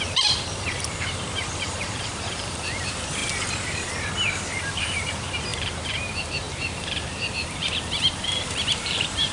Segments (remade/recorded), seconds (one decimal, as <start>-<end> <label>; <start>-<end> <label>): 0.0-3.2 remade; 3.2-4.6 recorded; 4.6-9.3 remade